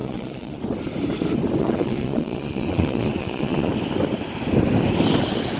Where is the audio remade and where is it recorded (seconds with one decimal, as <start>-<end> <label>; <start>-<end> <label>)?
0.0-0.6 remade; 0.6-1.6 recorded; 1.6-3.7 remade; 3.7-5.6 recorded